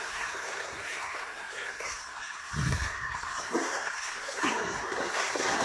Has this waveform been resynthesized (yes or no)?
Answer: yes